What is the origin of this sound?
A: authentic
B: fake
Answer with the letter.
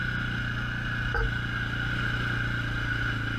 A